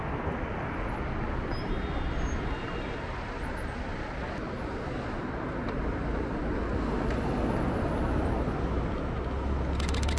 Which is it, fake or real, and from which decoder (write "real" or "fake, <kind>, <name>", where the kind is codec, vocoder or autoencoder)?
real